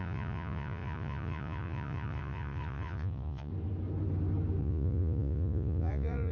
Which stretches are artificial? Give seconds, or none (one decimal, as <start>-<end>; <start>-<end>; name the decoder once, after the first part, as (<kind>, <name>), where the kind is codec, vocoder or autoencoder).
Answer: 0.0-3.5 (vocoder, Vocos); 4.6-6.3

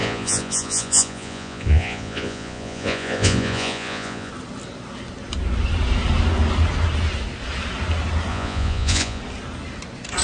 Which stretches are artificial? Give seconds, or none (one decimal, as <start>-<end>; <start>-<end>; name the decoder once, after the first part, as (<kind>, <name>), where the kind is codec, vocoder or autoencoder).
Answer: 0.0-4.3 (vocoder, Vocos); 8.3-9.2